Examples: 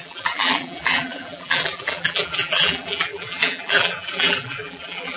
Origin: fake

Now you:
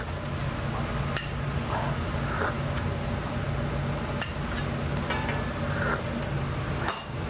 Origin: real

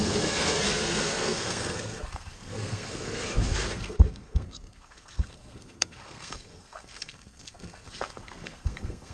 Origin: fake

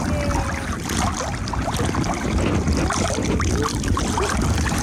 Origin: real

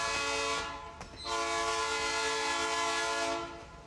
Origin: real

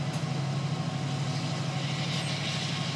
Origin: real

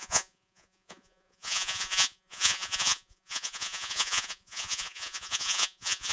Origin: fake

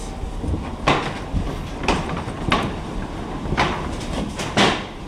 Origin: real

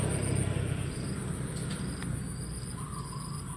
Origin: real